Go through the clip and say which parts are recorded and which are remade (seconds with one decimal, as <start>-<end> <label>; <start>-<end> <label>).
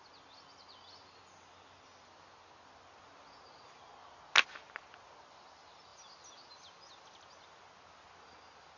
0.0-8.8 recorded